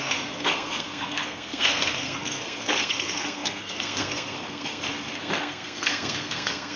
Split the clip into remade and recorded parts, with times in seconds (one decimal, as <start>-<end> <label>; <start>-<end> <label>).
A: 0.0-6.8 remade